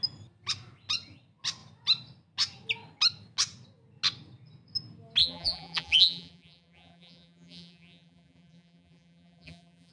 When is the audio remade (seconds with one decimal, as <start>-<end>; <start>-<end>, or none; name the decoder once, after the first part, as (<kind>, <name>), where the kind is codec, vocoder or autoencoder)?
5.2-9.9 (vocoder, BigVGAN v2)